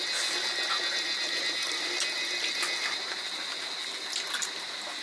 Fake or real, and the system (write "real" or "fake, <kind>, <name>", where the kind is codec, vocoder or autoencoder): real